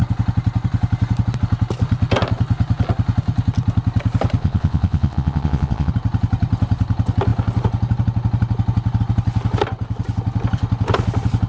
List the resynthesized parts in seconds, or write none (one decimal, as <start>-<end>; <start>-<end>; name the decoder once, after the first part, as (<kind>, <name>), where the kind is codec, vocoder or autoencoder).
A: 4.4-5.9 (vocoder, Vocos)